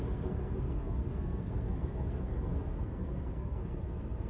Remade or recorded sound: remade